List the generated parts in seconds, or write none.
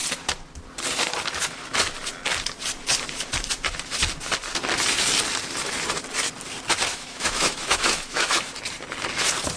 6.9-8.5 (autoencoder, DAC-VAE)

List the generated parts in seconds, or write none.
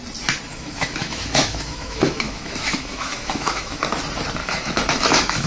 0.5-3.8 (autoencoder, DAC-VAE); 4.4-5.5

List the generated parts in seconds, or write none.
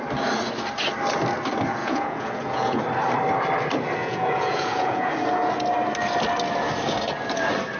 1.8-2.8 (vocoder, Vocos); 4.0-5.1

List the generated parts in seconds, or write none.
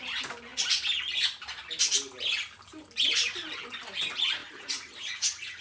4.4-5.6 (vocoder, Vocos)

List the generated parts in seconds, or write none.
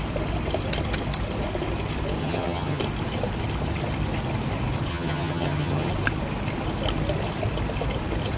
2.2-2.8 (vocoder, HiFi-GAN); 4.9-5.9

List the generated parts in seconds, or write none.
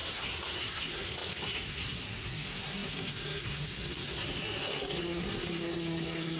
0.0-6.4 (codec, SNAC)